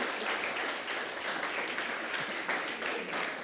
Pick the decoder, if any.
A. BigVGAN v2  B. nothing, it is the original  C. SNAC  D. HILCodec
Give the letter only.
A